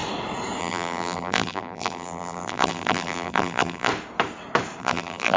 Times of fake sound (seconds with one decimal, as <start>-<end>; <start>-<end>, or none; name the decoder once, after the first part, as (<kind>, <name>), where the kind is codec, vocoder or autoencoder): 0.6-3.9 (vocoder, BigVGAN v2); 4.8-5.4